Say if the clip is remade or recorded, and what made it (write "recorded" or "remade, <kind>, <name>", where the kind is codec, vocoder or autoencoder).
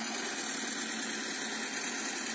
recorded